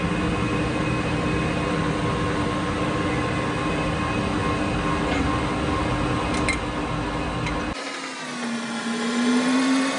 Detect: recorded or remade recorded